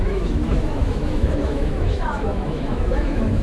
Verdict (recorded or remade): remade